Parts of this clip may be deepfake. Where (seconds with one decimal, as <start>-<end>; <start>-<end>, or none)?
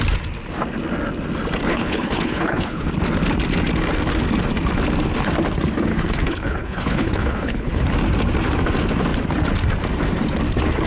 1.7-2.9; 5.9-7.9